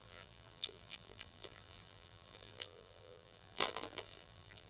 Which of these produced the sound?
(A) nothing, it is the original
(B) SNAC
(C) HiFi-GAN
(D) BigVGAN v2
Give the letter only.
D